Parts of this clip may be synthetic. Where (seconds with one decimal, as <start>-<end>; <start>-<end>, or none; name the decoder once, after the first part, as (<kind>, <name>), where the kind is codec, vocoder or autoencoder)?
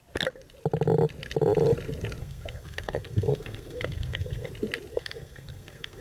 2.2-4.5 (codec, SNAC); 4.9-6.0